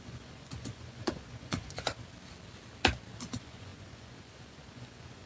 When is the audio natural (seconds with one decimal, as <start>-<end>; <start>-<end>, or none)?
1.9-3.2